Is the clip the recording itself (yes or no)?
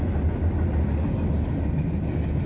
yes